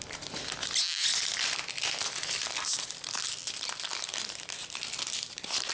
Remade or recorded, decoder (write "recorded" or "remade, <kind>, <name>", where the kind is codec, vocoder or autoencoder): recorded